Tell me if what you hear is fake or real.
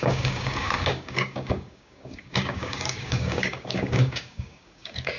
fake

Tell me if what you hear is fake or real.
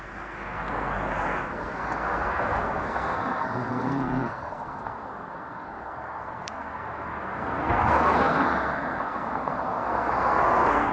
fake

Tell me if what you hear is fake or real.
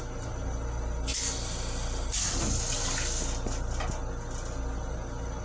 real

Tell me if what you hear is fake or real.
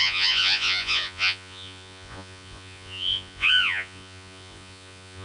fake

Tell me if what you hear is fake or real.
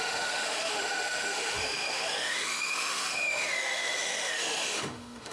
fake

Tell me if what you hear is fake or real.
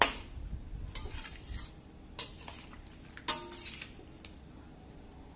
real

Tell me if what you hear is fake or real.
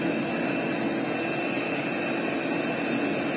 real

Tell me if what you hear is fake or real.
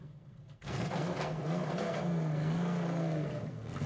fake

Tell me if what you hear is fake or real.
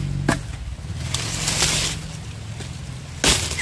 real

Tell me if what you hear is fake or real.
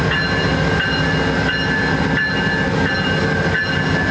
real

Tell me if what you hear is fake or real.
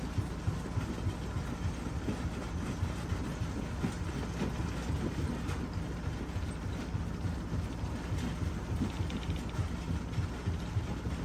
real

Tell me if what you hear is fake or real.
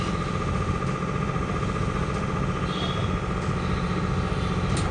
real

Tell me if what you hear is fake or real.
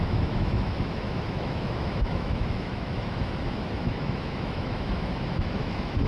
fake